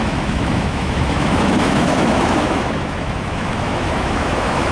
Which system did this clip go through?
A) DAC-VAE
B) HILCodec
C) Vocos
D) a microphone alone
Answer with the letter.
A